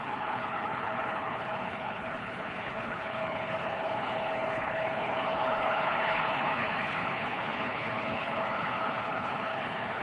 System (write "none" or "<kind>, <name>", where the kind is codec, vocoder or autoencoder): codec, HILCodec